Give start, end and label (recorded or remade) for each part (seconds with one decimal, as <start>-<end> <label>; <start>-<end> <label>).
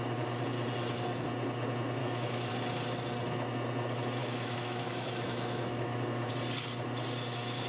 0.0-2.0 recorded; 2.0-2.5 remade; 2.5-4.2 recorded; 4.2-6.3 remade; 6.3-7.7 recorded